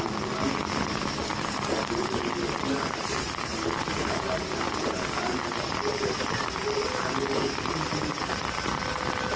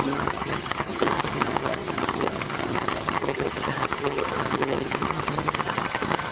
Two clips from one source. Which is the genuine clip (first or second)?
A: first